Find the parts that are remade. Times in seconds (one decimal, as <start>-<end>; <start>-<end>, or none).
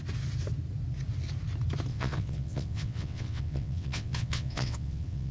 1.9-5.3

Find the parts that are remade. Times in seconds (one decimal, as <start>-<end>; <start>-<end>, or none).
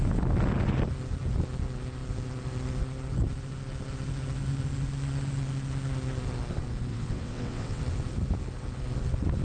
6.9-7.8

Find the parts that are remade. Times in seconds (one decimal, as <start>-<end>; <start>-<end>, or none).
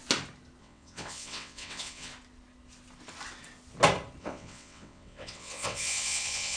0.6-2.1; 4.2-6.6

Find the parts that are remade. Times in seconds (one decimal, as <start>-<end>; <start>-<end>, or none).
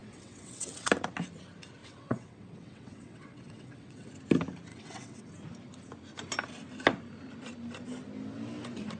0.0-0.9; 1.8-4.1; 4.7-5.3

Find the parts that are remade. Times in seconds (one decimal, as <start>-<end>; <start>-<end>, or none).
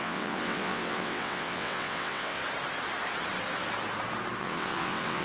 0.0-2.4; 4.4-5.2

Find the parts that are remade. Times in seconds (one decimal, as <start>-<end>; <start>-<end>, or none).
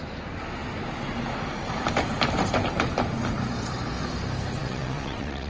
4.6-5.5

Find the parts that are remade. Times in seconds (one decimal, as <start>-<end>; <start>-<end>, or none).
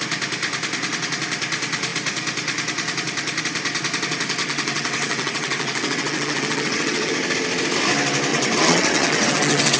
4.4-7.1; 8.3-9.8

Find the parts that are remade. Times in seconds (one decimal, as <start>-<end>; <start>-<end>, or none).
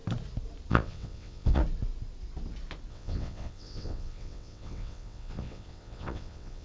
0.7-1.6; 2.9-6.6